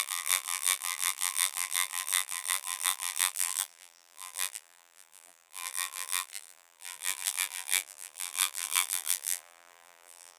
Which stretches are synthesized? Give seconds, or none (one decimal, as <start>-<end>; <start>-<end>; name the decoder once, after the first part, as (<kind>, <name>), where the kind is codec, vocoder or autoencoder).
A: 0.0-10.4 (vocoder, BigVGAN v2)